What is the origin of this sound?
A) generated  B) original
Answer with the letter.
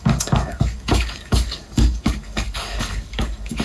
A